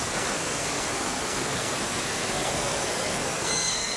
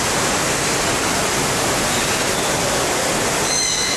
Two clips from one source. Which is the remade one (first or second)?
first